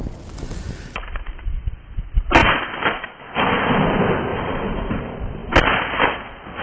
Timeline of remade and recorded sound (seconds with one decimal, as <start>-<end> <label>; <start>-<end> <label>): 0.0-2.4 recorded; 2.4-3.2 remade; 3.2-4.3 recorded; 4.3-5.0 remade; 5.0-6.6 recorded

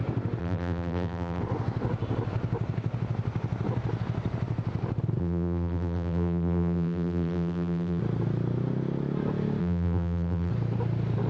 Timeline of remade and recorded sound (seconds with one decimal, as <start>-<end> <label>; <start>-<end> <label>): 0.0-0.4 recorded; 0.4-1.4 remade; 1.4-5.2 recorded; 5.2-8.0 remade; 8.0-9.6 recorded; 9.6-10.5 remade; 10.5-11.3 recorded

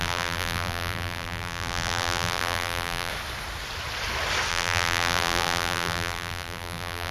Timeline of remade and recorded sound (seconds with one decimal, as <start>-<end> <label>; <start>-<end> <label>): 0.0-3.1 remade; 3.1-4.5 recorded; 4.5-7.1 remade

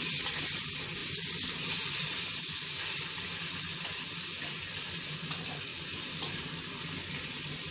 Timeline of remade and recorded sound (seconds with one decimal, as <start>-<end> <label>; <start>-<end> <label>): 0.0-5.7 recorded; 5.7-6.5 remade; 6.5-7.7 recorded

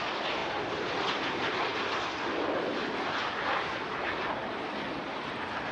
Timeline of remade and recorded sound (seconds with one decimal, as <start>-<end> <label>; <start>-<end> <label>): 0.0-5.7 recorded